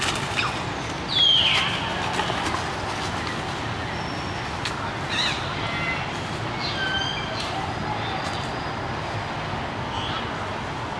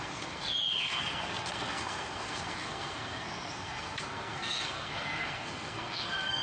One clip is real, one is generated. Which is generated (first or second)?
second